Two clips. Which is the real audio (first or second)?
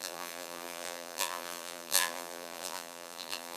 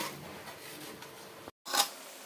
second